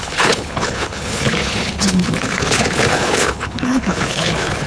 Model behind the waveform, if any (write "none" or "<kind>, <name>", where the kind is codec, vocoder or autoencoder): codec, HILCodec